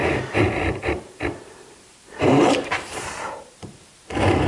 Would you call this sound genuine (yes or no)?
no